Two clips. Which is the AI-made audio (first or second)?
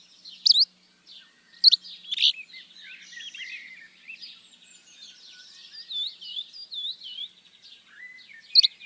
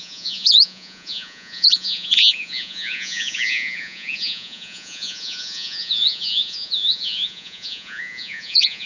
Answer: second